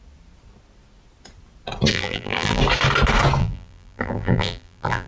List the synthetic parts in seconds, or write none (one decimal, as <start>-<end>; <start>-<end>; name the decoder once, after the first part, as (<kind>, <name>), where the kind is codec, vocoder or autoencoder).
1.9-2.6 (vocoder, BigVGAN v2); 3.4-5.1